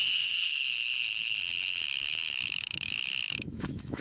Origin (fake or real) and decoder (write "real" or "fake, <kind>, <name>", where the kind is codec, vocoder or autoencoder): fake, autoencoder, DAC-VAE